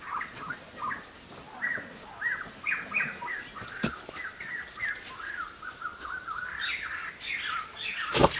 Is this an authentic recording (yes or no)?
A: yes